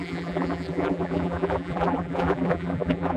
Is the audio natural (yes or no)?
no